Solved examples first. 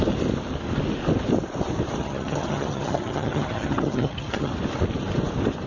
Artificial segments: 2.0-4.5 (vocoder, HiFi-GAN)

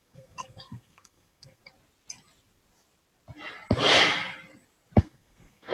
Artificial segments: 0.0-1.6 (codec, SNAC); 5.0-5.7

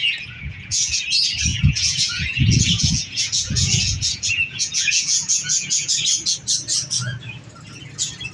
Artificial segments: 0.0-1.0 (vocoder, Vocos); 1.5-5.9

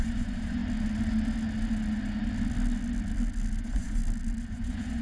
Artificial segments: 0.0-0.6 (vocoder, Vocos); 3.6-4.0; 4.5-5.0

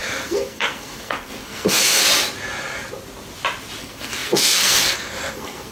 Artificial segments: 0.0-2.0 (codec, SNAC); 3.8-5.7

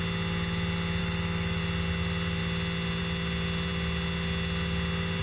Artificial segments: 1.0-1.6 (autoencoder, DAC-VAE)